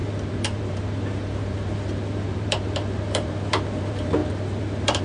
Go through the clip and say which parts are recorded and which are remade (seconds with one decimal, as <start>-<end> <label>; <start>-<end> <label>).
0.0-5.0 remade